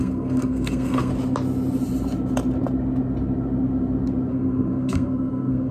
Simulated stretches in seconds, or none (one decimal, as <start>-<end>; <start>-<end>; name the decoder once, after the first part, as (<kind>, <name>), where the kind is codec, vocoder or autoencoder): 0.0-1.1 (codec, SNAC); 4.3-5.7